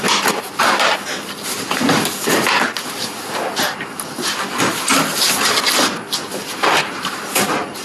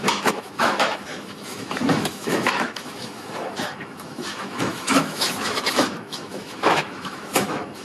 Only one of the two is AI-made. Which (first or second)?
second